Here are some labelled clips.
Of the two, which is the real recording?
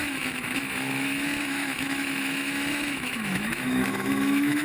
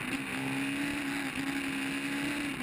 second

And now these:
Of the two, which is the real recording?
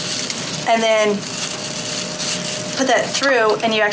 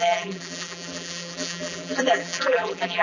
first